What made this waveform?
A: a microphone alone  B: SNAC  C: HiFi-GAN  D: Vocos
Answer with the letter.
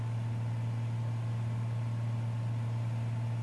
A